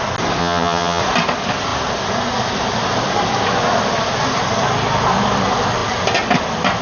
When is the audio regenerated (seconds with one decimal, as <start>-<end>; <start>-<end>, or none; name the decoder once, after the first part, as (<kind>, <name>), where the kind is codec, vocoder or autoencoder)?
0.4-1.0 (vocoder, HiFi-GAN)